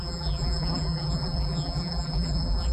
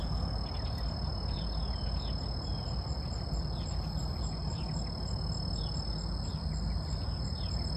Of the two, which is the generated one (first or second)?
first